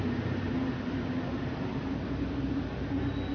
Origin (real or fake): real